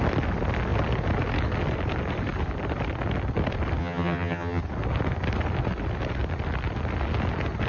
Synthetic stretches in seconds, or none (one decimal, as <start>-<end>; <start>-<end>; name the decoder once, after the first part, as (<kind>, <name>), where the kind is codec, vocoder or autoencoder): 3.8-4.6 (vocoder, HiFi-GAN)